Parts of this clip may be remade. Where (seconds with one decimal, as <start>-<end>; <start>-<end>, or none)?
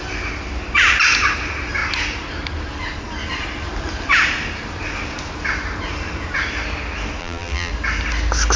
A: 7.2-7.7